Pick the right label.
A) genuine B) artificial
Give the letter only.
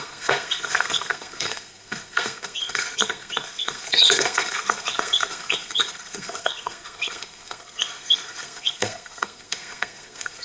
B